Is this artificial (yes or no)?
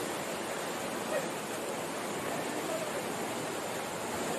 no